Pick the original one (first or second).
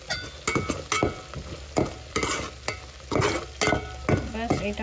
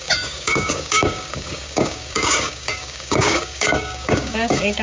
first